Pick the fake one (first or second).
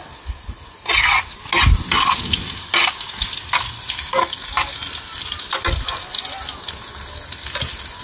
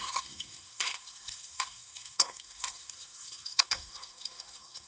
second